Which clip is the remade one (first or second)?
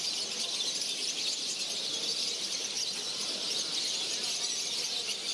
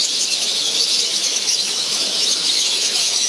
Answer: second